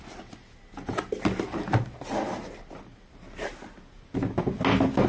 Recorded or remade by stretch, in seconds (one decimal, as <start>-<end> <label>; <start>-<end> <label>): 0.0-5.1 recorded